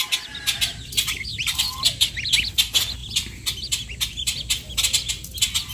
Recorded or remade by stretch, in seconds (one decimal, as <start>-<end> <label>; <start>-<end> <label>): 0.0-1.3 recorded; 1.3-2.1 remade; 2.1-5.7 recorded